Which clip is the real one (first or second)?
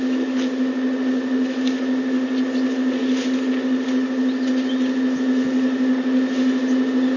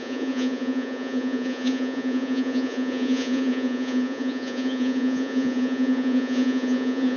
first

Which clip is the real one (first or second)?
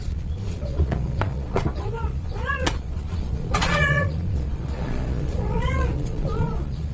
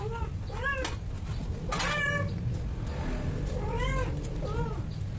second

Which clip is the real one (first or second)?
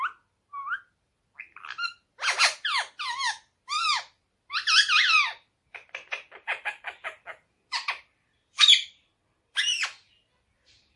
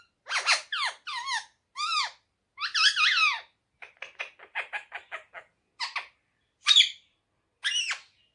second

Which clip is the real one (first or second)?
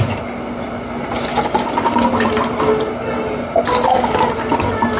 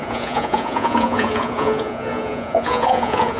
first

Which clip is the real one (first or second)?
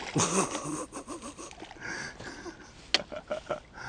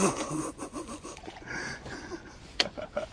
first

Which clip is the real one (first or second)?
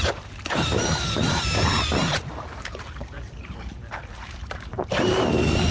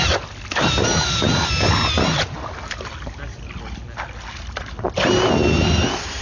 second